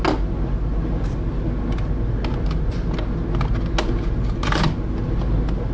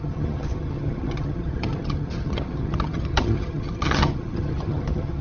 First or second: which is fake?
second